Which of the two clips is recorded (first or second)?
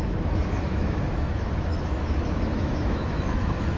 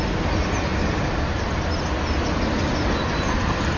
second